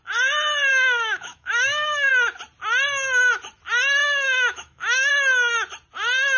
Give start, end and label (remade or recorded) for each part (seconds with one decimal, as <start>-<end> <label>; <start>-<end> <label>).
0.0-0.7 recorded; 0.7-2.1 remade; 2.1-4.0 recorded; 4.0-5.1 remade; 5.1-6.4 recorded